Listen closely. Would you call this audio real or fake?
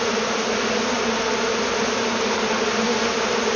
real